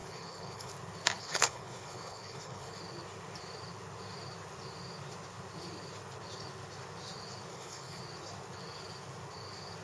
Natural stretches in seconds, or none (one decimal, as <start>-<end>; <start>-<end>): 0.7-1.2; 2.8-7.5; 8.0-9.8